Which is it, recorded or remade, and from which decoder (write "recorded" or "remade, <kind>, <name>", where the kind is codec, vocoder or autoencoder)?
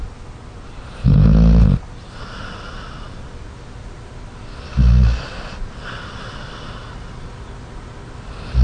recorded